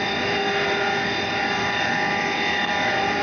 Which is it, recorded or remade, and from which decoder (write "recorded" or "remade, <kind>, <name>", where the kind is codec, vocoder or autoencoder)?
recorded